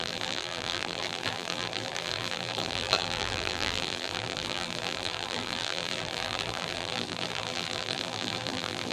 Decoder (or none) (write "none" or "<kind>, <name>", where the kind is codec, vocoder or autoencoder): vocoder, BigVGAN v2